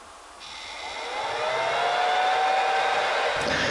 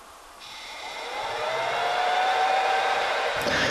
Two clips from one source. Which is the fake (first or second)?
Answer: second